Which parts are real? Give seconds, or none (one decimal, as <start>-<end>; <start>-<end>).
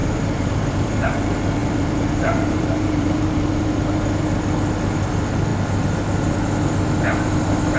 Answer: 1.1-1.6; 3.8-7.8